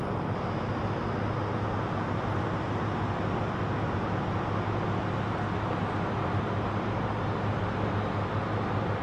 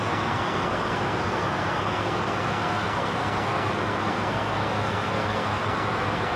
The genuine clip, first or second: first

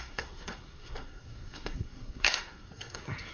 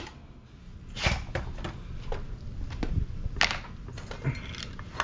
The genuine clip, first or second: second